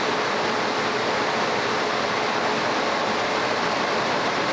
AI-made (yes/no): yes